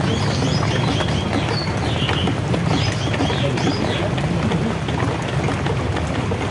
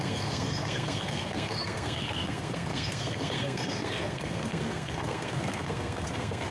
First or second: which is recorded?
first